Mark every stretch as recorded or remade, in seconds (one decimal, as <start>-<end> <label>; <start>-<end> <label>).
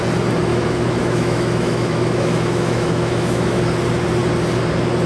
0.0-0.5 recorded; 0.5-3.6 remade; 3.6-5.1 recorded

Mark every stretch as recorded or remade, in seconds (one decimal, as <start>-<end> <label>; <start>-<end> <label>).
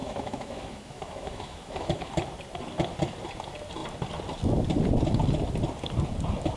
0.0-2.1 remade; 2.1-6.6 recorded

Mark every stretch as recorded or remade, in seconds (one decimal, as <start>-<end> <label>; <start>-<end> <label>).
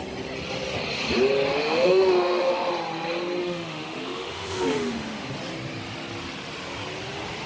0.0-1.5 recorded; 1.5-2.7 remade; 2.7-3.4 recorded; 3.4-5.3 remade; 5.3-7.5 recorded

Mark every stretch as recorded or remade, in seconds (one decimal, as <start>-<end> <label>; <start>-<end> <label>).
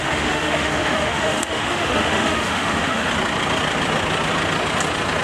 0.0-3.1 remade; 3.1-5.2 recorded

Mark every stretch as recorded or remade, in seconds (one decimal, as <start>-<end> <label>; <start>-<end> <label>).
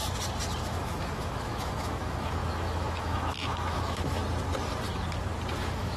0.0-0.6 recorded; 0.6-4.2 remade; 4.2-5.5 recorded; 5.5-6.0 remade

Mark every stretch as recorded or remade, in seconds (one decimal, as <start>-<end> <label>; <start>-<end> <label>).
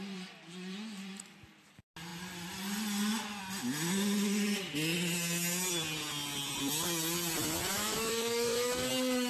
0.0-7.7 recorded; 7.7-8.9 remade; 8.9-9.3 recorded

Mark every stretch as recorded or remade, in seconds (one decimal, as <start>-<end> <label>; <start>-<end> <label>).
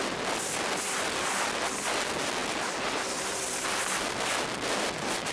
0.0-5.3 recorded